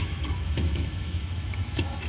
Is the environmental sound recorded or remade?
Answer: remade